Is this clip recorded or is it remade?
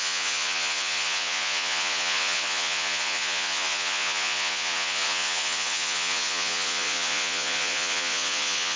remade